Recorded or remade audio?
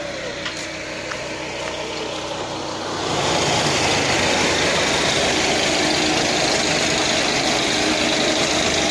recorded